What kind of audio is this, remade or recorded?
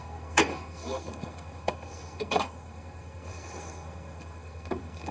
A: remade